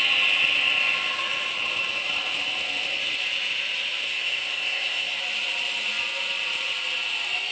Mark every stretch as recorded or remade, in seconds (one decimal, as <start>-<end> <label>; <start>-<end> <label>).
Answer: 0.0-4.0 recorded; 4.0-5.2 remade; 5.2-7.5 recorded